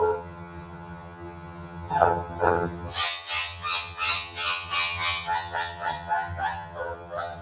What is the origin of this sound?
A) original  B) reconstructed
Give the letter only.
B